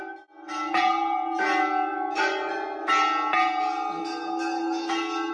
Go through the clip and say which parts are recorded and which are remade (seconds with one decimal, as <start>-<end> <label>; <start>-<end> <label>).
0.0-5.3 recorded